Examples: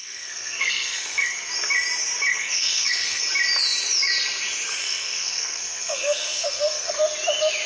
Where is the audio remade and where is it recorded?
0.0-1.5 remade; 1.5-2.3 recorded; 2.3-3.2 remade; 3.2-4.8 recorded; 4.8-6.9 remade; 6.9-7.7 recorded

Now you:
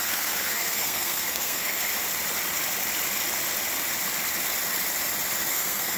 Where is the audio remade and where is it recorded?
0.0-1.9 remade; 1.9-5.5 recorded; 5.5-6.0 remade

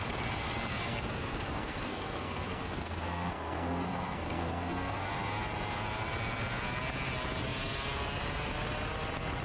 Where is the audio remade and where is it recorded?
0.0-0.7 recorded; 0.7-5.1 remade; 5.1-9.4 recorded

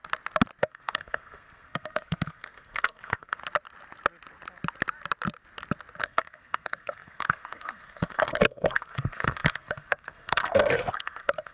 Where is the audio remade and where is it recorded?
0.0-0.6 recorded; 0.6-3.4 remade; 3.4-6.0 recorded; 6.0-11.5 remade

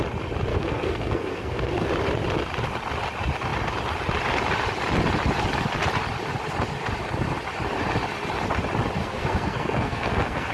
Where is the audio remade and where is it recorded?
0.0-0.5 recorded; 0.5-1.9 remade; 1.9-9.0 recorded; 9.0-10.5 remade

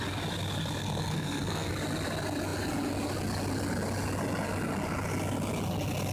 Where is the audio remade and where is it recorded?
0.0-0.8 recorded; 0.8-1.7 remade; 1.7-6.1 recorded

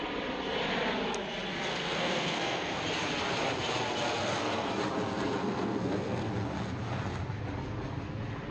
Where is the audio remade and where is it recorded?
0.0-1.7 recorded; 1.7-2.8 remade; 2.8-4.2 recorded; 4.2-4.7 remade; 4.7-5.4 recorded; 5.4-6.3 remade; 6.3-8.5 recorded

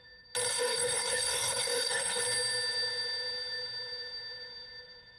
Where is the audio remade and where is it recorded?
0.0-0.5 recorded; 0.5-2.2 remade; 2.2-5.2 recorded